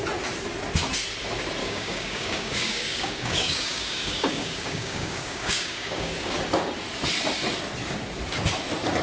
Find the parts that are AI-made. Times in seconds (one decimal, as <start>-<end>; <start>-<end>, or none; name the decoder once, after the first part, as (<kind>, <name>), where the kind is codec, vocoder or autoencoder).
1.6-6.3 (codec, DAC)